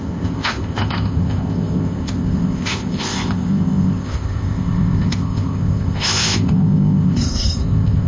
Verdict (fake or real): fake